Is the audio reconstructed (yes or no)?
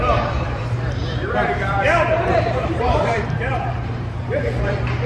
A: yes